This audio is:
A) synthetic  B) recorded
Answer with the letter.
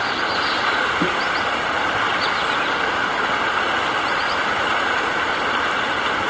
B